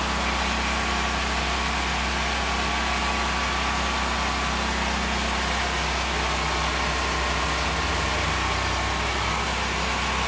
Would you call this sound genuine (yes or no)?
yes